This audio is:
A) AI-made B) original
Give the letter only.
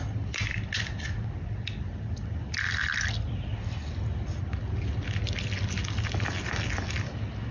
B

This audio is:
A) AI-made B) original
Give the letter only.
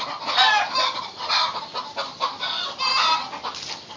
B